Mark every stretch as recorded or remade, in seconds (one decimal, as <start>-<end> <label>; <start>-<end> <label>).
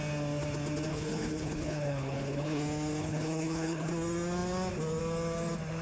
0.0-0.9 recorded; 0.9-2.6 remade; 2.6-3.0 recorded; 3.0-3.9 remade; 3.9-5.8 recorded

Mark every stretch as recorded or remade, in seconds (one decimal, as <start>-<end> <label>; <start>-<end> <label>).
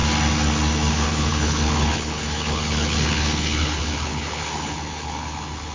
0.0-0.9 recorded; 0.9-5.7 remade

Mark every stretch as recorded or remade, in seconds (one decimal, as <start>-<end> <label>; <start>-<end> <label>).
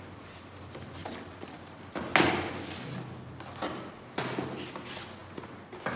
0.0-6.0 recorded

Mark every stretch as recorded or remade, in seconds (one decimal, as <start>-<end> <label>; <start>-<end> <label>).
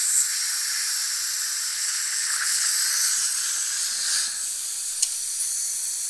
0.0-1.7 recorded; 1.7-2.7 remade; 2.7-6.1 recorded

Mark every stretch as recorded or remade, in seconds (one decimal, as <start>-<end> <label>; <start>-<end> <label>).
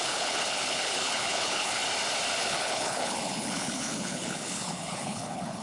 0.0-1.8 remade; 1.8-2.4 recorded; 2.4-5.6 remade